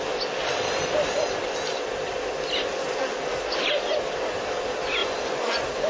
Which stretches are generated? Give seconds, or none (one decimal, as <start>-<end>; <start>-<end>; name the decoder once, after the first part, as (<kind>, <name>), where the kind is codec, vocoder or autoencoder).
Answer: 5.0-5.9 (vocoder, Vocos)